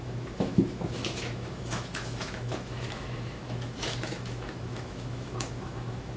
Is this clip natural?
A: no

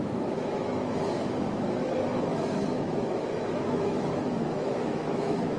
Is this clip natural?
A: no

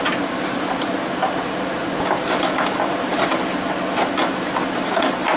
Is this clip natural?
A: yes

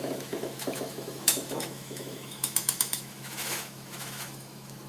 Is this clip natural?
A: no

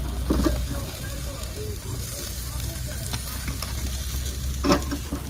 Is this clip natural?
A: yes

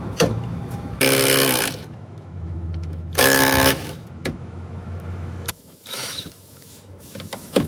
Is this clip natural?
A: no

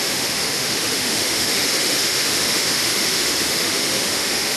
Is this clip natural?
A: no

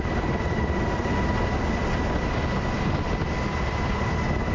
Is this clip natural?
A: yes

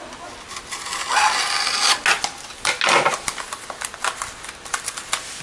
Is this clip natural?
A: yes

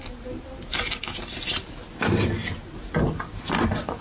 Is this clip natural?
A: yes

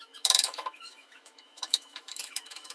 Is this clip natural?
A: no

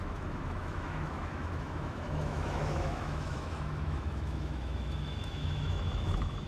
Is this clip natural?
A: no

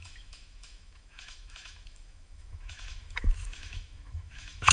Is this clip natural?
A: no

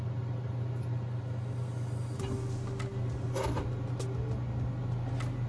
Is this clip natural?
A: yes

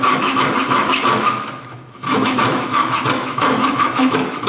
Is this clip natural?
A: no